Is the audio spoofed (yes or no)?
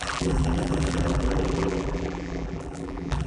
yes